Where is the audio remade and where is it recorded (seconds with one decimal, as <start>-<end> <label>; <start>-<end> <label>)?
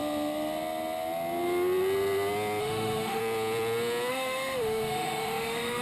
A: 0.0-2.6 recorded; 2.6-3.2 remade; 3.2-4.1 recorded; 4.1-5.8 remade